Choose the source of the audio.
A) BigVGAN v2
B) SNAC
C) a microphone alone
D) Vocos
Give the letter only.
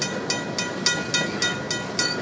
C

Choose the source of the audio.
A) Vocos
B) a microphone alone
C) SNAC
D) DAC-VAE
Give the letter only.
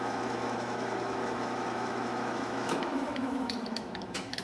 D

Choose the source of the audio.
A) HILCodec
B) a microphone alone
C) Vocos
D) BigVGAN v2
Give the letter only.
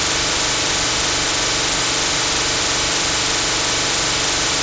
B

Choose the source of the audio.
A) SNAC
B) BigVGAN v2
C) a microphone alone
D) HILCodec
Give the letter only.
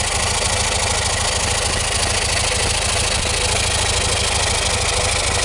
C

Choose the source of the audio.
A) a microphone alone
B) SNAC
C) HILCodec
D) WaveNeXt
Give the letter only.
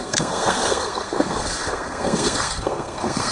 B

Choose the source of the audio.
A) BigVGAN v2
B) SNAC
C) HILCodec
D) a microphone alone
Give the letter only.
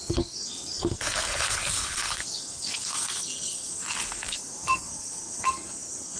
B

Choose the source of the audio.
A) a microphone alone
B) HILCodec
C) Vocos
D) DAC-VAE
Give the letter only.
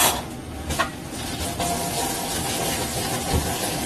A